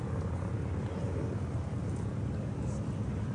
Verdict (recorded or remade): recorded